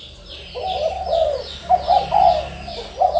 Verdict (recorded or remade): recorded